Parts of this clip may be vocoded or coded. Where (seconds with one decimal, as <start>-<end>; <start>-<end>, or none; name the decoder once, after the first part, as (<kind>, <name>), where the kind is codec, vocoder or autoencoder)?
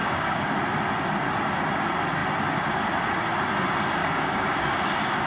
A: 0.0-0.5 (codec, DAC); 4.0-4.8